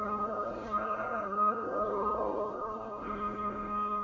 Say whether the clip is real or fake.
fake